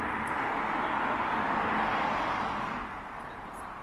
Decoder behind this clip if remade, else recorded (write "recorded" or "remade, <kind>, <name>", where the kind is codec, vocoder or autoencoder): recorded